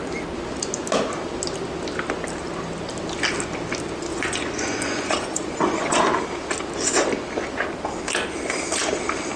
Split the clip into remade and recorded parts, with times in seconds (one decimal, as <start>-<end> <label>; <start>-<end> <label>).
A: 0.0-4.1 recorded; 4.1-6.0 remade; 6.0-9.4 recorded